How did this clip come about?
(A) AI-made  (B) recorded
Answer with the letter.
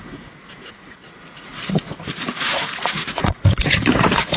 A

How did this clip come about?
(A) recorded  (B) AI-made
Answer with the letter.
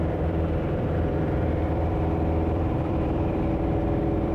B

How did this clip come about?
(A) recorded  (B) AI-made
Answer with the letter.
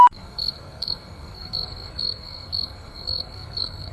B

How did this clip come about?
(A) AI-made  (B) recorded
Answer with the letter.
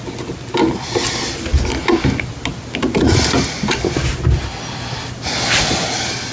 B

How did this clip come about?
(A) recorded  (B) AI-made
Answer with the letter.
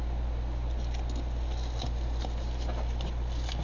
A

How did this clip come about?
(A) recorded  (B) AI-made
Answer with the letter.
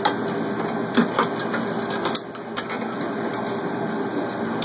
A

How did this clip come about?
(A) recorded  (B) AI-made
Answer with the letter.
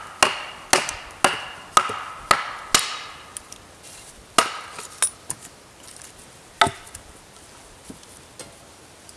A